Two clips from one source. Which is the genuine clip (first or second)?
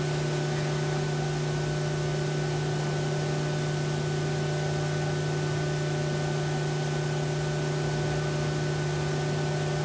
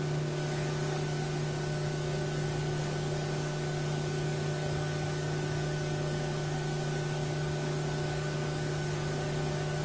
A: first